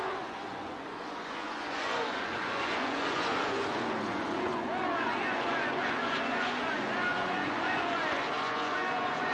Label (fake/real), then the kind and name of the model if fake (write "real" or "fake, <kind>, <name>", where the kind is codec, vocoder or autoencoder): fake, vocoder, Vocos